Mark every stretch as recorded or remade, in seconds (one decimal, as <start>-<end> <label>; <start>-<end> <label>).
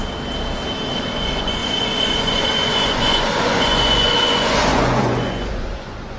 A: 0.0-1.1 recorded; 1.1-6.2 remade